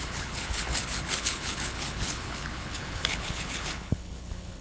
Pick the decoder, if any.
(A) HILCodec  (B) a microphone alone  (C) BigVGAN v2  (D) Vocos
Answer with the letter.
A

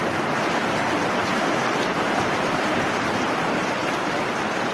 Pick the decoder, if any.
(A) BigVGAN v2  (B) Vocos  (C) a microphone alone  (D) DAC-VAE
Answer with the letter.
A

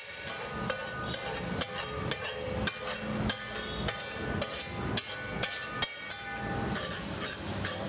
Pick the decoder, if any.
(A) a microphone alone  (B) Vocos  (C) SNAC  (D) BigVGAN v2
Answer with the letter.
A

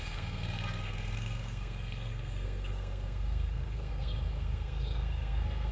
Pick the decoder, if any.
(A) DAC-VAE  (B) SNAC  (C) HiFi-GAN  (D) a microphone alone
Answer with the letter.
B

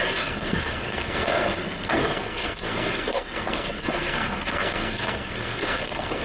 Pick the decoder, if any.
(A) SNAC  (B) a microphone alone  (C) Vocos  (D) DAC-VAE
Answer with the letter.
A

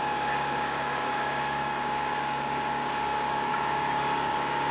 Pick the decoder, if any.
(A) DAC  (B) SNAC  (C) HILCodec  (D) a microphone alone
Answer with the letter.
A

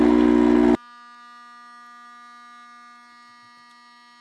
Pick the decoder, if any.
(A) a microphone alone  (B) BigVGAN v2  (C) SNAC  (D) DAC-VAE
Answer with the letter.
A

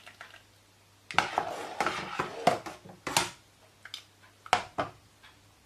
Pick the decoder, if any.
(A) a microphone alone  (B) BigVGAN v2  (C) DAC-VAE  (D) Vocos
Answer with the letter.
A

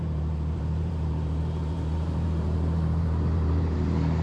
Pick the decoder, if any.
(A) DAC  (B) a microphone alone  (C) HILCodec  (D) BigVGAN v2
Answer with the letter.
D